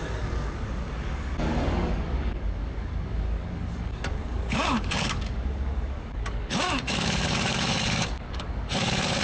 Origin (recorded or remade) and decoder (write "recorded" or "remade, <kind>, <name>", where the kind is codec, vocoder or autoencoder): remade, codec, DAC